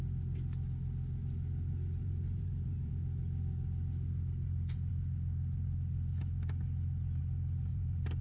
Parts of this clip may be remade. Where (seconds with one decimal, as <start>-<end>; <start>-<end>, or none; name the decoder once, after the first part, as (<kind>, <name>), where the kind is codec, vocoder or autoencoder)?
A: 2.0-2.9 (vocoder, BigVGAN v2); 7.7-8.2